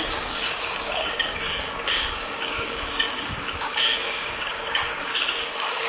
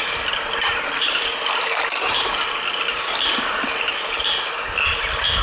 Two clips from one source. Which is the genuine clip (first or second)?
second